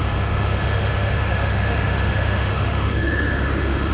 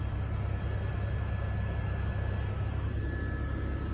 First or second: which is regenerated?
first